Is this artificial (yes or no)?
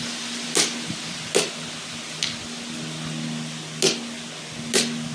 no